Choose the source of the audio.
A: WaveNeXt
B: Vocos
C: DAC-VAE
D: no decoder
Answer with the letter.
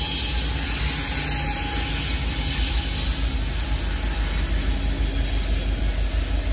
D